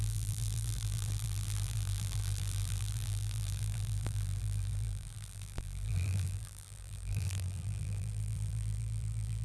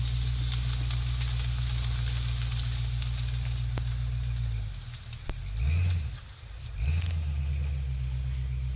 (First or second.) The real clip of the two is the second